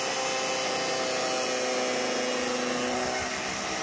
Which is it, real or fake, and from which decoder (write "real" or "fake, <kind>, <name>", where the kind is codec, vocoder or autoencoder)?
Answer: real